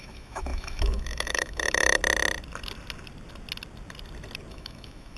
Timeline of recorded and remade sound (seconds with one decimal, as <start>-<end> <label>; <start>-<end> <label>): 0.0-2.0 remade; 2.0-4.5 recorded; 4.5-5.2 remade

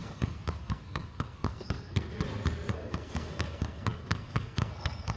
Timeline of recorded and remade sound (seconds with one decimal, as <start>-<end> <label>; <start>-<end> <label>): 0.0-2.1 remade; 2.1-2.7 recorded; 2.7-5.2 remade